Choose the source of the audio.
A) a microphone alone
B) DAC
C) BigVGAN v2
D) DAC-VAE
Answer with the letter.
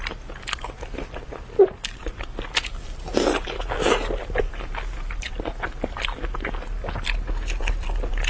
A